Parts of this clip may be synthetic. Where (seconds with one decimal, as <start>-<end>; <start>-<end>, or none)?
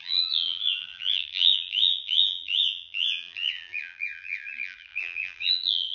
0.0-5.9